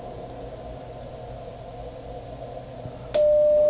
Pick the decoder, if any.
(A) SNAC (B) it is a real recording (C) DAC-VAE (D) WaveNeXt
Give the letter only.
B